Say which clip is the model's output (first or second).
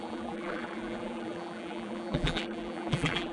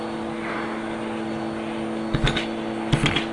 first